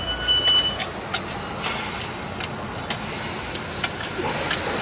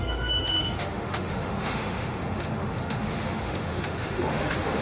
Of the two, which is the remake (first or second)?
second